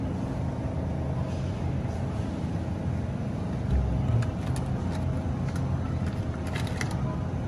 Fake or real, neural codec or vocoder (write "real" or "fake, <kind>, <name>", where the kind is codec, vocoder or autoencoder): real